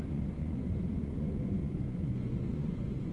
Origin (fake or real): fake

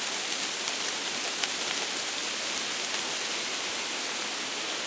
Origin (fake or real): real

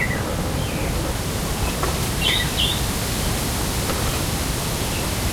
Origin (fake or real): real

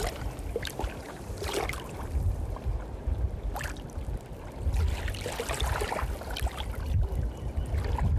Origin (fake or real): real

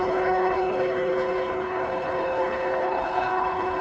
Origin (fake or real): fake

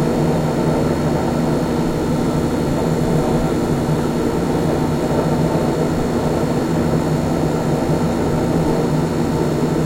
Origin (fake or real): real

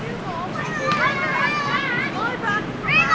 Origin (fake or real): real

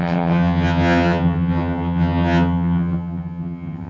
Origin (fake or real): fake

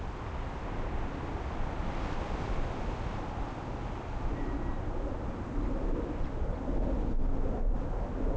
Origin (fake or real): real